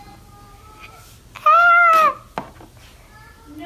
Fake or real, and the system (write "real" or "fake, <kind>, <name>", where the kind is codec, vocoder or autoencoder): real